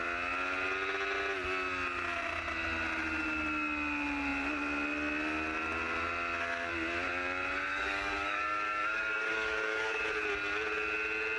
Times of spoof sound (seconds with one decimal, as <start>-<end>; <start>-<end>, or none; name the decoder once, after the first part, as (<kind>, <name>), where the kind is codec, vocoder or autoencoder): 7.7-10.0 (codec, DAC)